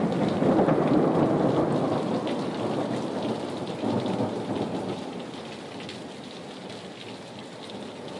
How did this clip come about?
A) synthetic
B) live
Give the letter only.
B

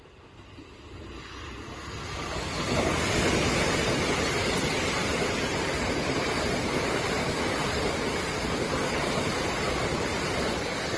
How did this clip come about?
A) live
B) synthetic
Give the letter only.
A